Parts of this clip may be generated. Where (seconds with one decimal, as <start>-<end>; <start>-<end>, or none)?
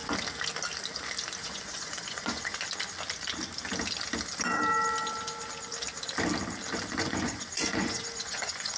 1.4-2.5; 6.9-8.8